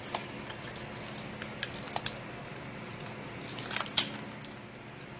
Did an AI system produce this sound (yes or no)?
no